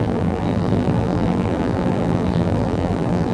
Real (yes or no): no